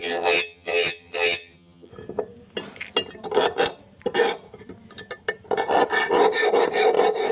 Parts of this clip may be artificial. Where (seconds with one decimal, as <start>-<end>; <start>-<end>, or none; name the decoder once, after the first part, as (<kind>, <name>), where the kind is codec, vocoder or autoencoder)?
0.0-1.9 (vocoder, HiFi-GAN)

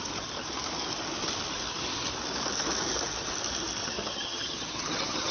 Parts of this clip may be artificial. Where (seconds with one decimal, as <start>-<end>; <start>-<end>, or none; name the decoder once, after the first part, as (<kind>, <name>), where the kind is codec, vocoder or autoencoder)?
3.8-5.3 (vocoder, HiFi-GAN)

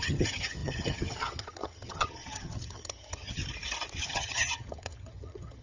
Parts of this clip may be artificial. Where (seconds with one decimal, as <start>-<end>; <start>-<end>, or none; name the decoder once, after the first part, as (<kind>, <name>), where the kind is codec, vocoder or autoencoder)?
0.0-3.4 (vocoder, HiFi-GAN); 4.0-5.6